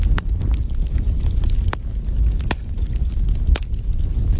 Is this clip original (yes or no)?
yes